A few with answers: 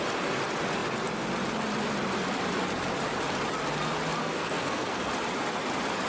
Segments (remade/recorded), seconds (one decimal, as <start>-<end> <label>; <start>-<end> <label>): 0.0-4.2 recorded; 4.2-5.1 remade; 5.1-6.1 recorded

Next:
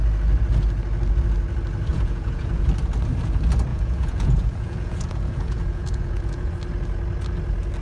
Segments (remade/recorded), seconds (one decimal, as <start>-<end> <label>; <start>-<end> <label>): 0.0-1.9 recorded; 1.9-2.7 remade; 2.7-3.7 recorded; 3.7-6.5 remade; 6.5-7.8 recorded

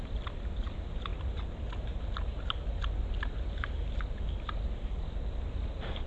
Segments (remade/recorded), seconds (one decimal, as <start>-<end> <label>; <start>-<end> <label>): 0.0-6.1 recorded

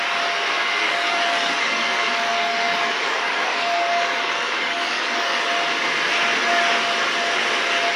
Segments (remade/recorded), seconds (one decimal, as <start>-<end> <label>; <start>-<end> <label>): 0.0-0.8 recorded; 0.8-5.4 remade; 5.4-8.0 recorded

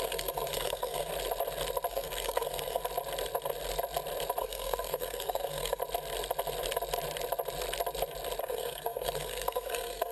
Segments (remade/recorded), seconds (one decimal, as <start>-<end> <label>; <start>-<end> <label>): 0.0-1.1 remade; 1.1-1.9 recorded; 1.9-2.8 remade; 2.8-4.4 recorded; 4.4-5.8 remade; 5.8-8.4 recorded; 8.4-10.1 remade

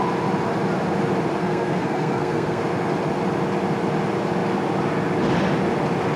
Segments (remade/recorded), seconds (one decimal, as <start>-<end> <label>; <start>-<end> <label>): 0.0-1.4 recorded; 1.4-2.6 remade; 2.6-6.2 recorded

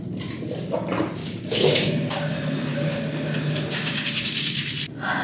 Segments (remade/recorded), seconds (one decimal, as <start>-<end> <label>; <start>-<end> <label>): 0.0-1.2 recorded; 1.2-2.3 remade; 2.3-2.7 recorded; 2.7-4.6 remade; 4.6-5.2 recorded

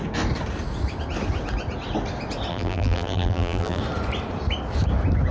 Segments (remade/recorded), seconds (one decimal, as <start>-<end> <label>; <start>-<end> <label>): 0.0-2.5 recorded; 2.5-3.8 remade; 3.8-5.3 recorded